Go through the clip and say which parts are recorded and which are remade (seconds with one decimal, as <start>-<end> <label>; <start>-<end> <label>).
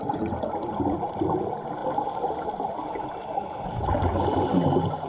0.0-5.1 recorded